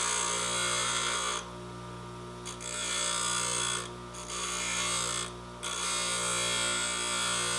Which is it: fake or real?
real